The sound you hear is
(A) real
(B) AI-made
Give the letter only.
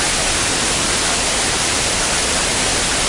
A